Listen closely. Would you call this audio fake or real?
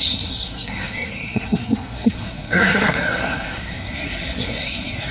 fake